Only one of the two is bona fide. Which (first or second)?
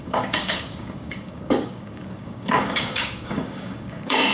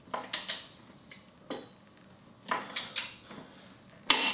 second